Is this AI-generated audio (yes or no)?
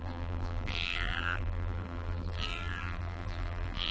yes